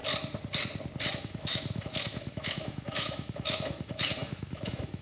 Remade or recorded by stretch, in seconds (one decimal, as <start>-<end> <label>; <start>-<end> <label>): 0.0-1.1 recorded; 1.1-5.0 remade